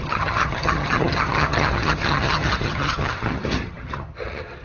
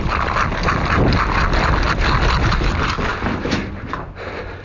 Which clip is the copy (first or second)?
first